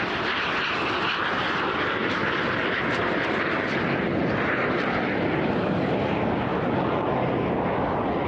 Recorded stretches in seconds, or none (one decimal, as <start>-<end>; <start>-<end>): 0.0-8.3

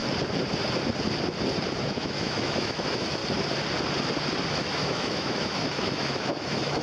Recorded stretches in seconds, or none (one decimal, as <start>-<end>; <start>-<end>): 0.0-1.8; 3.2-4.6

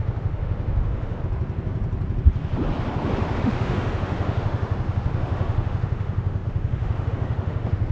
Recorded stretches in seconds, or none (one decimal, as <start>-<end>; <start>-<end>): 1.2-3.4

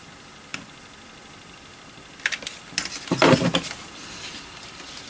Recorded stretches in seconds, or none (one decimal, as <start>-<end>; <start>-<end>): 0.0-5.1

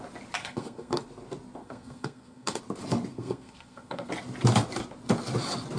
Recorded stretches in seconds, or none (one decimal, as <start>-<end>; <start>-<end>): 0.0-0.4; 1.0-1.6; 2.6-3.1; 4.1-5.8